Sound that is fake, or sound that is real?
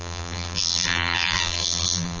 fake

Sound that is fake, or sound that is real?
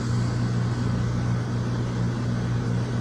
real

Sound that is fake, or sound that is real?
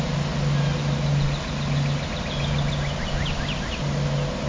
real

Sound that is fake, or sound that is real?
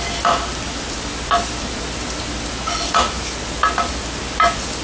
real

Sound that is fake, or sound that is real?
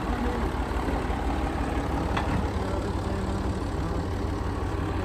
real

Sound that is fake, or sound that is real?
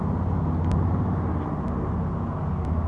real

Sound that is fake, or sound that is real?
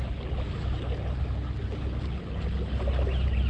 real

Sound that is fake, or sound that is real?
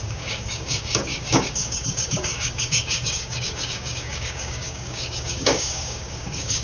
fake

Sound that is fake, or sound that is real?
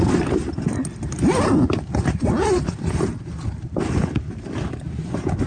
real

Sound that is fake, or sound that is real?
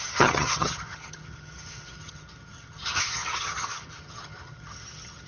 fake